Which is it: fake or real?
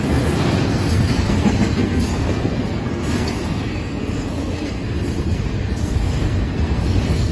fake